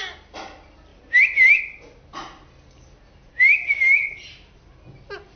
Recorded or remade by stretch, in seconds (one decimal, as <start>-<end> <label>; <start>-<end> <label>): 0.0-0.9 recorded; 0.9-1.6 remade; 1.6-5.4 recorded

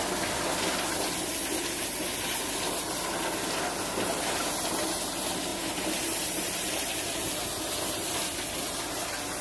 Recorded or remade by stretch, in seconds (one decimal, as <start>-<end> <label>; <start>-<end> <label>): 0.0-1.4 recorded; 1.4-2.3 remade; 2.3-5.5 recorded; 5.5-7.3 remade; 7.3-9.4 recorded